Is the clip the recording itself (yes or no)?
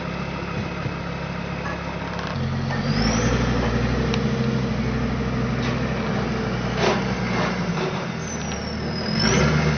yes